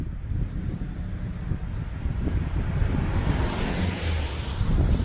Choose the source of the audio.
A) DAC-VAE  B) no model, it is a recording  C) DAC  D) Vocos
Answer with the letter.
B